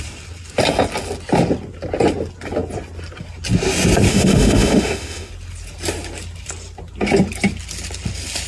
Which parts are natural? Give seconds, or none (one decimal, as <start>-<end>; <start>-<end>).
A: 0.0-4.1; 5.3-8.5